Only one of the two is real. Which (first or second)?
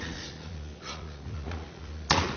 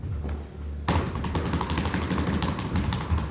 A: second